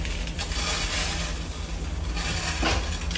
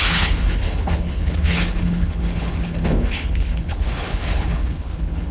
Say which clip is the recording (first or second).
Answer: first